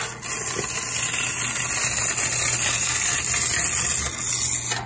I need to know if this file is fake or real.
real